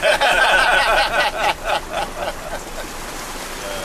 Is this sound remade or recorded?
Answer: recorded